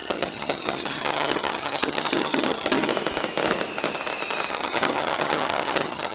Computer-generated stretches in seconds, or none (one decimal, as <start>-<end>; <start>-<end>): 0.0-2.9; 4.5-6.1